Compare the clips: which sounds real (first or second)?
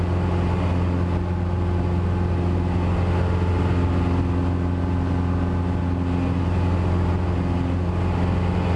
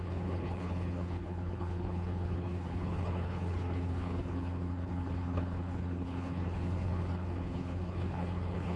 first